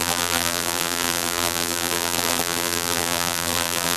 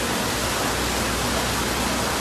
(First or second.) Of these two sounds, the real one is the second